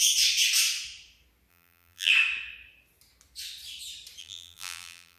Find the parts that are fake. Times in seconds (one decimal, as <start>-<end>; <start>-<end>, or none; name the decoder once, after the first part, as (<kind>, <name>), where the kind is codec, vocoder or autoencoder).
1.5-2.1 (vocoder, BigVGAN v2); 4.2-5.2